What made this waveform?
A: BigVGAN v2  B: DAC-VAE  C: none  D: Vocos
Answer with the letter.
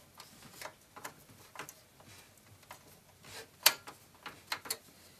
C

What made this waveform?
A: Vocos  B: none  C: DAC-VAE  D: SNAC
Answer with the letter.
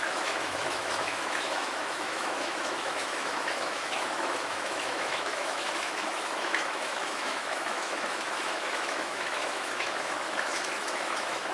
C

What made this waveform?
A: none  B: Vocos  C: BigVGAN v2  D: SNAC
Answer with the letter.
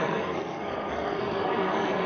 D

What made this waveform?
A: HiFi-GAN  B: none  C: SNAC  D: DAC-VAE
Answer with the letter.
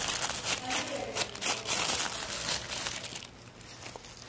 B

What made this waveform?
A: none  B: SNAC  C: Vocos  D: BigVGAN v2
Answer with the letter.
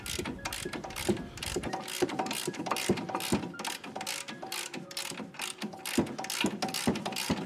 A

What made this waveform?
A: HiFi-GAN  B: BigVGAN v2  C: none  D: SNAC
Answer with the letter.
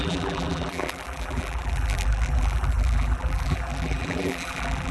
B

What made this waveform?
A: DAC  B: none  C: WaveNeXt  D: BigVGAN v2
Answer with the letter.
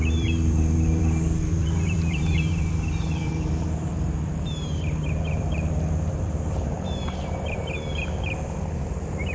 D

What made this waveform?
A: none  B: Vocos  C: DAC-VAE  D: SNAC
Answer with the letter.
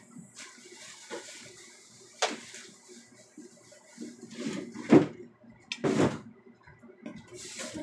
A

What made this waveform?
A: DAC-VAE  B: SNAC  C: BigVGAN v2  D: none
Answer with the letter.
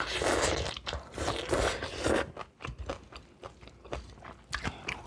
D